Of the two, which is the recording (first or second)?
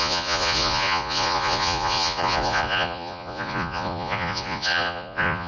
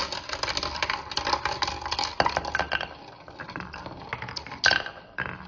second